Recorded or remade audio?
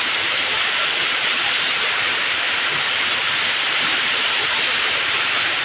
recorded